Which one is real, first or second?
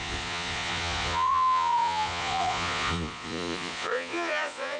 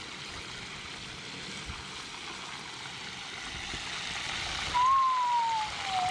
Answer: second